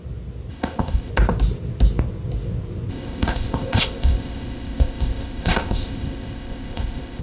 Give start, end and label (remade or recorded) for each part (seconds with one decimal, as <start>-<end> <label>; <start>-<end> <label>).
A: 0.0-0.5 recorded; 0.5-1.1 remade; 1.1-2.9 recorded; 2.9-7.2 remade